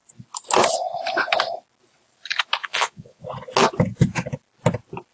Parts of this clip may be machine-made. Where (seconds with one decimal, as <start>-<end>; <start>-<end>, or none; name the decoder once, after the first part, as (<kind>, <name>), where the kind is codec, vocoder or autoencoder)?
2.6-3.2 (vocoder, Vocos)